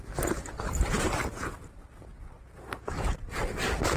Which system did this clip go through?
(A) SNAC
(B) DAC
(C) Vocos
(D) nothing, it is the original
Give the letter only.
D